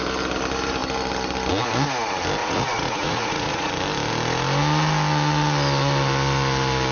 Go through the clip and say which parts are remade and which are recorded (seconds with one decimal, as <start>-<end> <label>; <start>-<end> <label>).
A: 0.0-2.4 recorded; 2.4-3.7 remade; 3.7-6.9 recorded